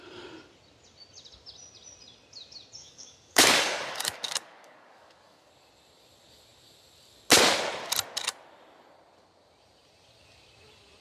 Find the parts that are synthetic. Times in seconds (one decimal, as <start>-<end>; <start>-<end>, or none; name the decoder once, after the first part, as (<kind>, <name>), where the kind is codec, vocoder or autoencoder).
2.8-5.5 (codec, DAC)

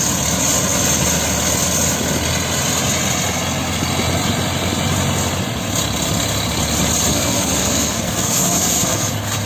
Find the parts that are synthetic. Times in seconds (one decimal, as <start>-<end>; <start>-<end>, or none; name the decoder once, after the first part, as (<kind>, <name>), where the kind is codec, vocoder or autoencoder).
7.1-9.1 (codec, SNAC)

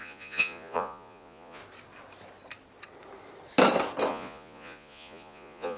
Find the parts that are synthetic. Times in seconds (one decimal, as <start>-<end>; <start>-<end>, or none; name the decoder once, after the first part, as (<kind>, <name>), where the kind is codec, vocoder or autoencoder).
0.0-1.6 (vocoder, Vocos); 4.1-5.8

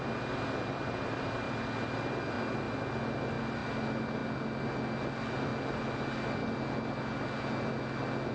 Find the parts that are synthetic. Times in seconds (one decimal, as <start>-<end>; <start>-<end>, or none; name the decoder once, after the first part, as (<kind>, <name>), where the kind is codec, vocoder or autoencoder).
none

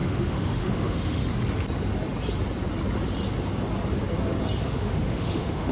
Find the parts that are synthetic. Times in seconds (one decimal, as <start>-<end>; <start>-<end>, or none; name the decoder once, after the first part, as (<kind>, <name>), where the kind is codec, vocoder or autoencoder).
0.0-1.2 (autoencoder, DAC-VAE); 4.6-5.7

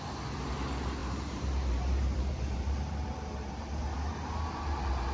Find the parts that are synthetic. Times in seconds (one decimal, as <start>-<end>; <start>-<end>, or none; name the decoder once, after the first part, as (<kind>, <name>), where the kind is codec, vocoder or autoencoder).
1.0-4.1 (vocoder, BigVGAN v2)